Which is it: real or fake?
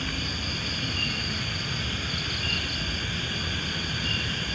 real